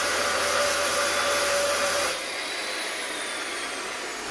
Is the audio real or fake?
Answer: real